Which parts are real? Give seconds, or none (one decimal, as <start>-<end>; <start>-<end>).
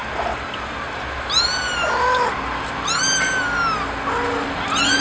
0.0-5.0